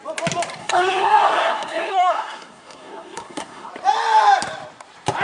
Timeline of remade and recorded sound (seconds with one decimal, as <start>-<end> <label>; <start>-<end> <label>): 0.0-0.6 recorded; 0.6-3.7 remade; 3.7-5.2 recorded